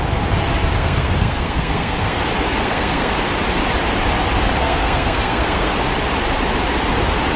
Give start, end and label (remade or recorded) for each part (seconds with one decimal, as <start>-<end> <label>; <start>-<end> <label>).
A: 0.0-0.8 recorded; 0.8-2.2 remade; 2.2-2.6 recorded; 2.6-3.1 remade; 3.1-4.6 recorded; 4.6-5.7 remade; 5.7-7.4 recorded